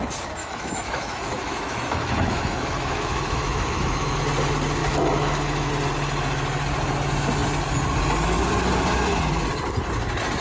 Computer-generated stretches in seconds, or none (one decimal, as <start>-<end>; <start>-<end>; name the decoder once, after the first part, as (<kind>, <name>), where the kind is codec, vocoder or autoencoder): 0.4-4.2 (autoencoder, DAC-VAE); 4.8-5.7